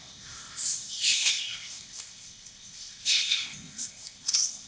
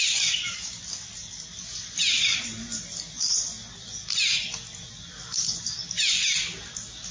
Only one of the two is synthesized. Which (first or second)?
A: first